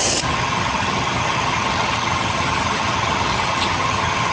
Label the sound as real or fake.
fake